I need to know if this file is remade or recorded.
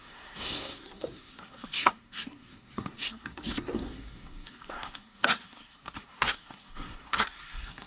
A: remade